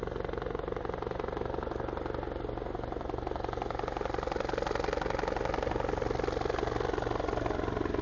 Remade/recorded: recorded